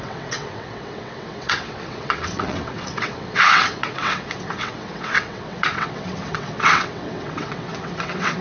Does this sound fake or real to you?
fake